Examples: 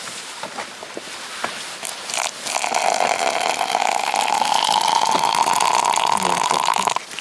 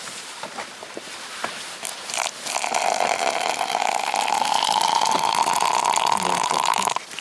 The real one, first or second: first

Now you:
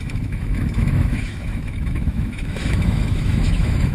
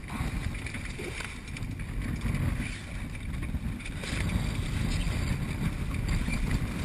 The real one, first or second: second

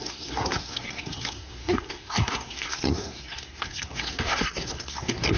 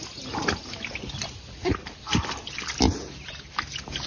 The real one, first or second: second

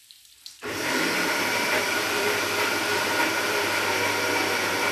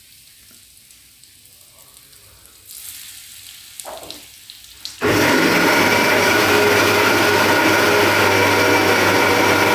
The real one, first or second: second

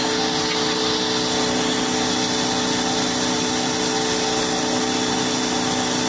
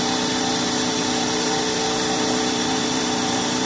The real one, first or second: first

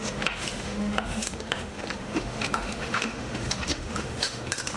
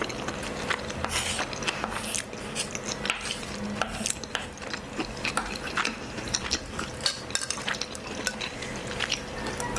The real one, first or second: second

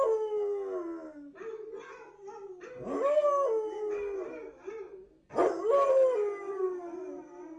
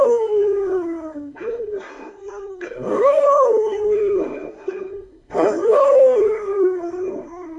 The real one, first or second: first